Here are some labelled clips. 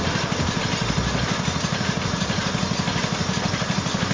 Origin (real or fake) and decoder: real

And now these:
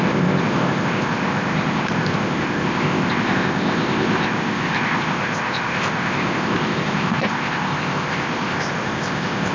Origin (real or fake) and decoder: fake, codec, ZipCodec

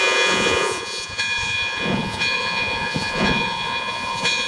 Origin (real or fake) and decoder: fake, vocoder, Vocos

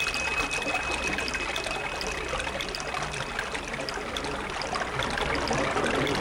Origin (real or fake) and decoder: real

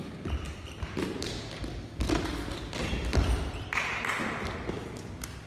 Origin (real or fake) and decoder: real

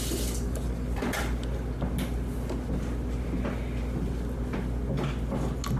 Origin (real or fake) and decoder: real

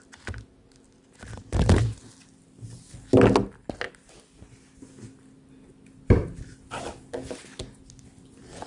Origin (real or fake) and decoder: real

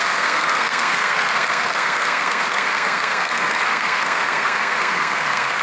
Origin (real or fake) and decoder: fake, codec, SNAC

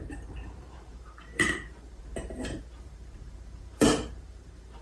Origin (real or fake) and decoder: fake, vocoder, BigVGAN v2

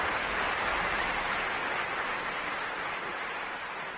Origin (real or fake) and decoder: fake, vocoder, BigVGAN v2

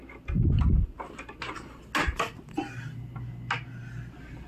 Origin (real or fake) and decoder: real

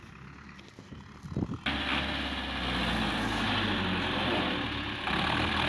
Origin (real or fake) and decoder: real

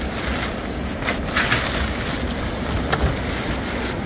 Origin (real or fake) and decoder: real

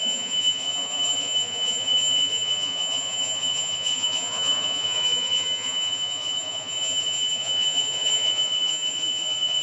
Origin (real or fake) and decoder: fake, vocoder, Vocos